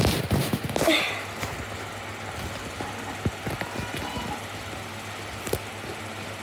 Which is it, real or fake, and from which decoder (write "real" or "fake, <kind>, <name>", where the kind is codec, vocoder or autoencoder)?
real